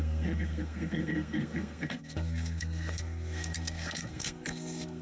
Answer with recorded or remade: remade